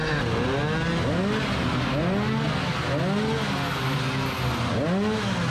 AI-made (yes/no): no